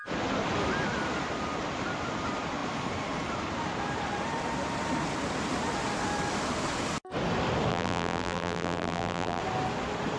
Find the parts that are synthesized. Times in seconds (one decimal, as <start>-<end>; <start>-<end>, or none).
7.7-9.4